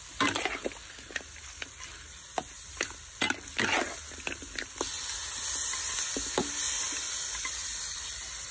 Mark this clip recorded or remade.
recorded